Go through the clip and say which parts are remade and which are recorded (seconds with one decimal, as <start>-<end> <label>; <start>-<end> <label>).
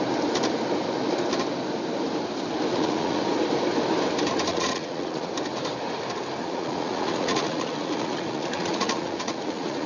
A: 0.0-2.7 recorded; 2.7-3.2 remade; 3.2-4.5 recorded; 4.5-5.3 remade; 5.3-6.4 recorded; 6.4-9.9 remade